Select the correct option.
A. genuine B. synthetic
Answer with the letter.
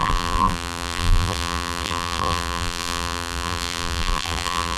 B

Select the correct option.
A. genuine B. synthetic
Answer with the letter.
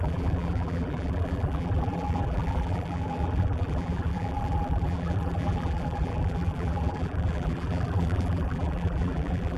B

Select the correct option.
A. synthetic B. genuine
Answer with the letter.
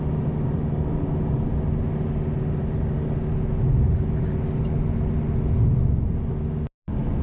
B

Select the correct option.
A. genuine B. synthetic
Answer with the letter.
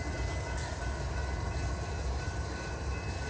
A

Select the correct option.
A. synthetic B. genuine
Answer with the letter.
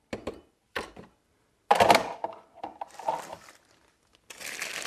B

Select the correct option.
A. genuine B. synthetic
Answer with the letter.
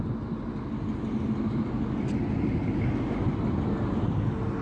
A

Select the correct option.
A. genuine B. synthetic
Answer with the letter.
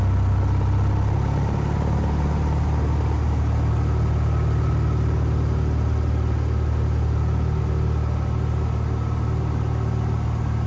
A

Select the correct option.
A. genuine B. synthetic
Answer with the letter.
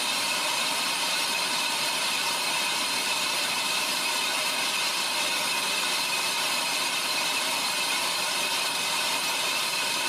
B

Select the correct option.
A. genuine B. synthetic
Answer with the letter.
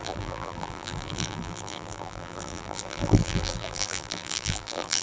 B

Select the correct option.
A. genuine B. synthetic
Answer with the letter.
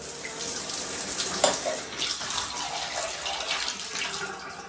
A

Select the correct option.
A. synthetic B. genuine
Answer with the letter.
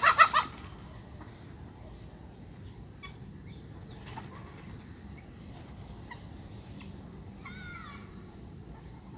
A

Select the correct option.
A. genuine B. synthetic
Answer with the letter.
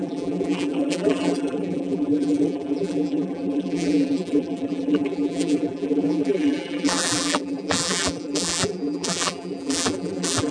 B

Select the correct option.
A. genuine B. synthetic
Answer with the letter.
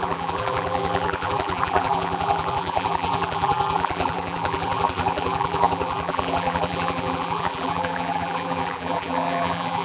B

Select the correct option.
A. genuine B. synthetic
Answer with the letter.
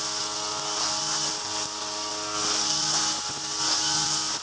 A